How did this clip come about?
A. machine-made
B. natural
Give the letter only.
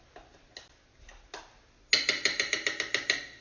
B